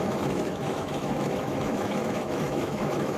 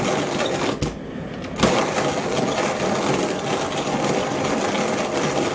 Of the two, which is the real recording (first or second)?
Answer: second